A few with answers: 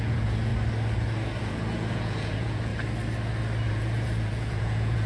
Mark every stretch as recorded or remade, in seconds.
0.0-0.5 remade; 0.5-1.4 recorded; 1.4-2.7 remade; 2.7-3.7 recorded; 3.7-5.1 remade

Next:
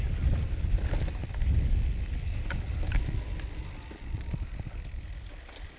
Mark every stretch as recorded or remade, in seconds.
0.0-5.8 recorded

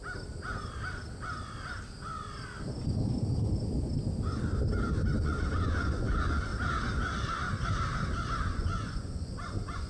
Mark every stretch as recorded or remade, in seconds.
0.0-5.2 recorded; 5.2-6.5 remade; 6.5-8.4 recorded; 8.4-9.9 remade

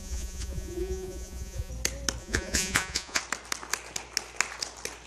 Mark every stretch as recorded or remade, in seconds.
0.0-1.7 remade; 1.7-2.2 recorded; 2.2-3.2 remade; 3.2-5.1 recorded

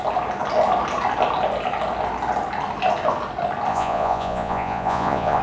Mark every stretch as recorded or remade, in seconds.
0.0-3.7 recorded; 3.7-5.4 remade

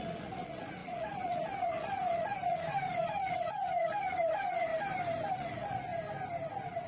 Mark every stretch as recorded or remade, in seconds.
0.0-4.7 remade; 4.7-5.3 recorded; 5.3-5.9 remade; 5.9-6.5 recorded; 6.5-6.9 remade